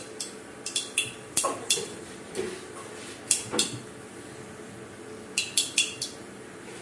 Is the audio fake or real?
fake